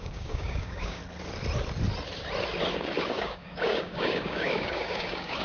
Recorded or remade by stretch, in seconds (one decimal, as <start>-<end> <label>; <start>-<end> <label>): 0.0-1.0 remade; 1.0-2.7 recorded; 2.7-5.4 remade